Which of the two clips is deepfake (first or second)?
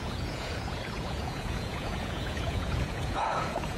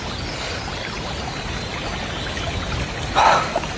first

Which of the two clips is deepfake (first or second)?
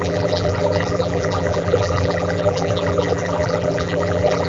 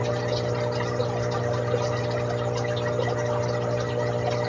first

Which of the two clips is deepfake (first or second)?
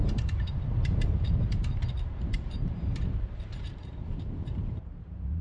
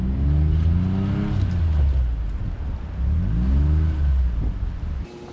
first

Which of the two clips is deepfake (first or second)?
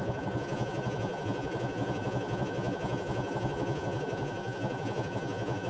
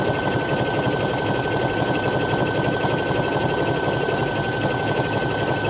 first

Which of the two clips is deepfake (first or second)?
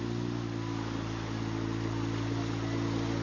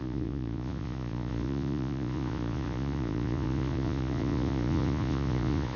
second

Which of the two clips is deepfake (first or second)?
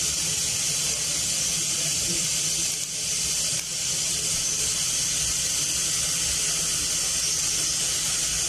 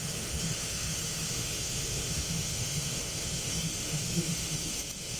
second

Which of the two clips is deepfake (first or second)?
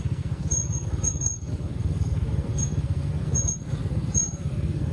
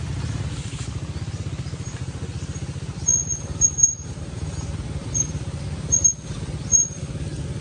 first